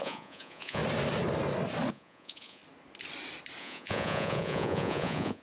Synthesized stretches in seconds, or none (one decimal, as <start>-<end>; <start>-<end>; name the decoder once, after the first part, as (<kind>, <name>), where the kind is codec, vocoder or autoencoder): 0.0-0.8 (vocoder, Vocos); 1.9-2.6; 3.6-5.4